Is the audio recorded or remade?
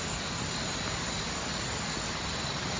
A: recorded